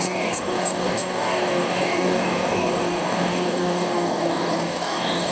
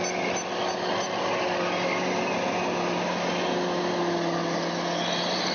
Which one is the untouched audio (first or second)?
second